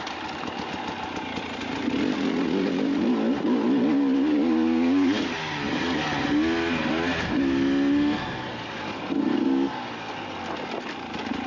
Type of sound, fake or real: real